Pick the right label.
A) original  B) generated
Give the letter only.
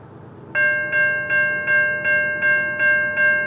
A